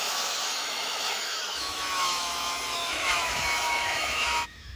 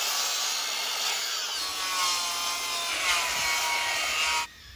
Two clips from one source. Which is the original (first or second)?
second